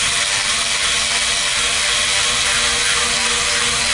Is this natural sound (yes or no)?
yes